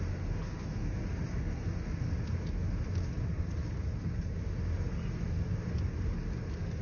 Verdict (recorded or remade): recorded